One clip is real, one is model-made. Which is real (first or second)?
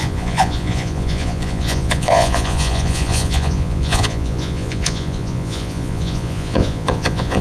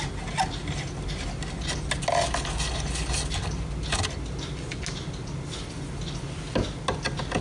second